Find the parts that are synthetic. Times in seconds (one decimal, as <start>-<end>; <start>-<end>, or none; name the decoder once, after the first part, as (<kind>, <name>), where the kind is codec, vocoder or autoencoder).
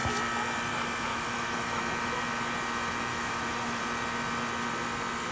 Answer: 1.1-1.8 (autoencoder, DAC-VAE); 3.1-3.8